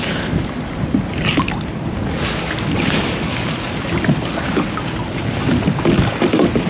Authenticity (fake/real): real